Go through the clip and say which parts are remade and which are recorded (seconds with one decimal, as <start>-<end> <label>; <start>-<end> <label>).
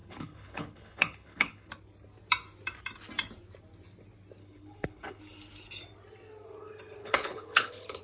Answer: 0.0-1.7 remade; 1.7-4.4 recorded; 4.4-5.2 remade; 5.2-7.0 recorded; 7.0-8.0 remade